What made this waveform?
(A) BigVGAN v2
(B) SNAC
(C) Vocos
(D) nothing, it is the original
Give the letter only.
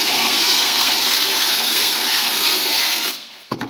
B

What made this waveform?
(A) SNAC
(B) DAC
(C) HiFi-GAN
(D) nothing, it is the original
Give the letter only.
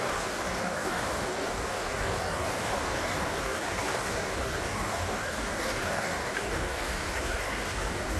B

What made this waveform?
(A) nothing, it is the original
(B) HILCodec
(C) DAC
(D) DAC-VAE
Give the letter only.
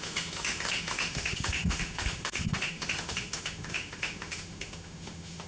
D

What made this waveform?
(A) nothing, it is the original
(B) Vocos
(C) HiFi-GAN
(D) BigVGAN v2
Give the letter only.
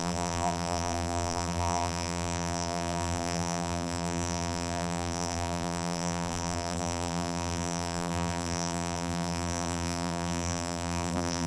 D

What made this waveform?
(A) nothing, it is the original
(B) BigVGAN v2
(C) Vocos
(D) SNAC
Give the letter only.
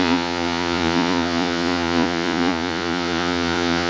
C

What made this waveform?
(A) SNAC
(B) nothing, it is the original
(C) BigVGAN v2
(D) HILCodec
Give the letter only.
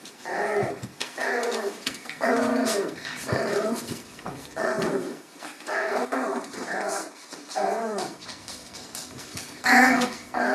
A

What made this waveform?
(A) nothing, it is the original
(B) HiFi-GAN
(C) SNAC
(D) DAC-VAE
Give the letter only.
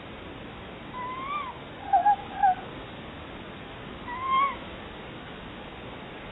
A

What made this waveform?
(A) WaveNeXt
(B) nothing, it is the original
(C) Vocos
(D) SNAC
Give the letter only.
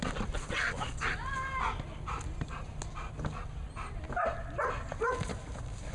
B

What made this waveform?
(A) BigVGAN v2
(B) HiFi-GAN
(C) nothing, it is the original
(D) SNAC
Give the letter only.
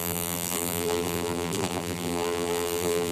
A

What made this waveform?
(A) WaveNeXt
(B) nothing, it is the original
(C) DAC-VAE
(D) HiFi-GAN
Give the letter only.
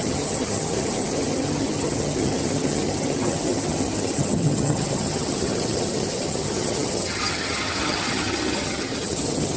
D